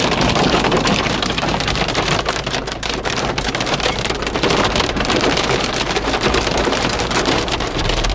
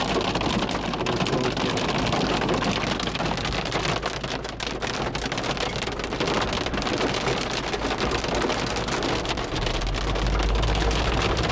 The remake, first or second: first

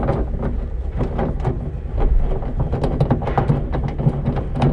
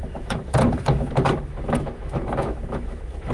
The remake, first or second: second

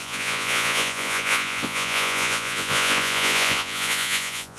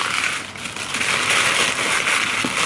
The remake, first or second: first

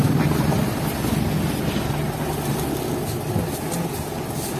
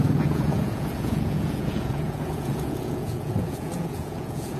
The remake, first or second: second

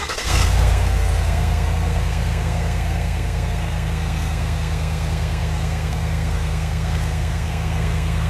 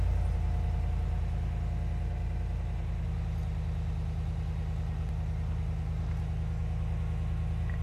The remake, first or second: first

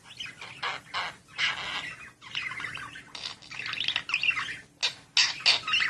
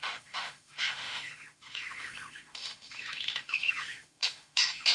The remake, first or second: second